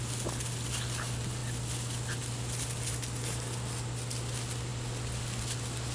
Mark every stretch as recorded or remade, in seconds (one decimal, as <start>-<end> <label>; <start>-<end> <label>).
0.0-5.9 recorded